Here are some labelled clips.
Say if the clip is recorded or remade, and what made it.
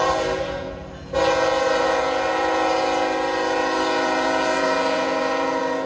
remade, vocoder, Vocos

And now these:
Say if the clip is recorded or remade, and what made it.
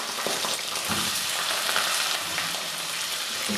remade, vocoder, BigVGAN v2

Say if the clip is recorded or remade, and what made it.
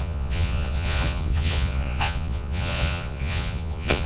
remade, vocoder, Vocos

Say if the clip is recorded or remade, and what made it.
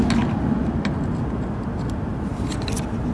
recorded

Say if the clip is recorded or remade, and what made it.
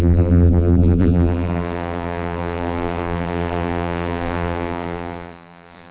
remade, vocoder, BigVGAN v2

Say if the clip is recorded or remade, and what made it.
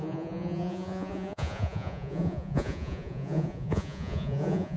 remade, vocoder, Vocos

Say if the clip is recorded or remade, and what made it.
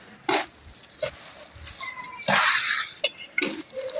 recorded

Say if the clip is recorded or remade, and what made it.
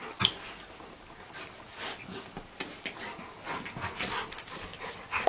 recorded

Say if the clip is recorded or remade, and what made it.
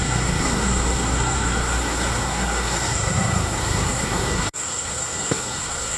remade, codec, SNAC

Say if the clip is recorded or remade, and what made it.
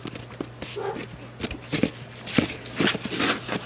recorded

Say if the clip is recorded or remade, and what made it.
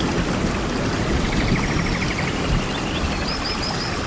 recorded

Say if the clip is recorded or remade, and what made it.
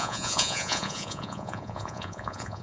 remade, vocoder, Vocos